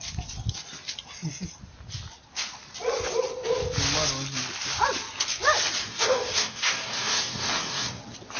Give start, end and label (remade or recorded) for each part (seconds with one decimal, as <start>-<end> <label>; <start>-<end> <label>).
0.0-5.8 recorded; 5.8-8.0 remade; 8.0-8.4 recorded